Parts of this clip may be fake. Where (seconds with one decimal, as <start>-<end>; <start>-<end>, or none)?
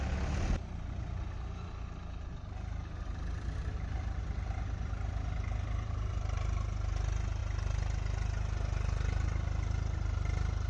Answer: none